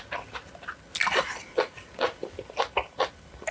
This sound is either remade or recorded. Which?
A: recorded